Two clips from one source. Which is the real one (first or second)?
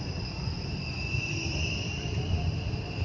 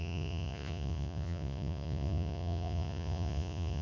first